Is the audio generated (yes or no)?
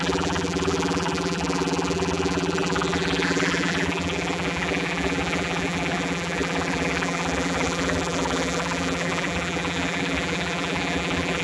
yes